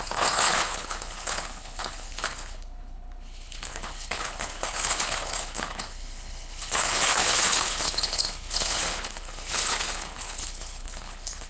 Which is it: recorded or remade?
remade